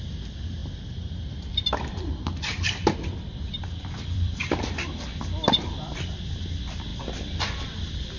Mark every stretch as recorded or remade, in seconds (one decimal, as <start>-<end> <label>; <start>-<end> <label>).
0.0-0.6 recorded; 0.6-5.0 remade; 5.0-8.2 recorded